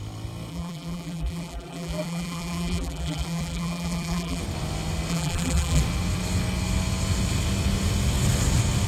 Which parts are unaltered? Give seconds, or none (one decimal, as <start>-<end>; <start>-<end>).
0.0-0.5; 4.4-5.1; 5.8-8.9